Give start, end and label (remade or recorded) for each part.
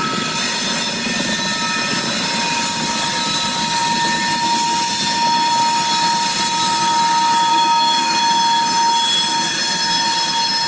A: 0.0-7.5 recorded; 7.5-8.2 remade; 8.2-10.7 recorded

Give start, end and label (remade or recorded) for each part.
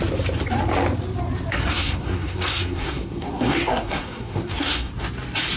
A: 0.0-1.5 recorded; 1.5-4.9 remade; 4.9-5.6 recorded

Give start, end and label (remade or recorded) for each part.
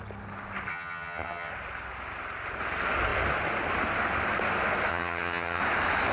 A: 0.0-0.7 recorded; 0.7-1.5 remade; 1.5-4.9 recorded; 4.9-5.6 remade; 5.6-6.1 recorded